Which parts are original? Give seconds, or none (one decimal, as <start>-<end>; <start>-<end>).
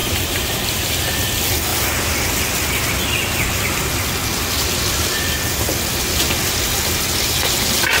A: 0.9-8.0